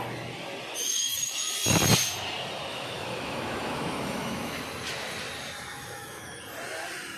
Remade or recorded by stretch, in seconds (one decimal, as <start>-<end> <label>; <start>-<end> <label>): 0.0-0.8 recorded; 0.8-1.5 remade; 1.5-2.7 recorded; 2.7-4.6 remade; 4.6-5.7 recorded; 5.7-6.4 remade; 6.4-7.2 recorded